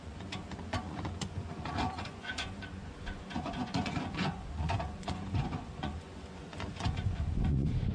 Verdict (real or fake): fake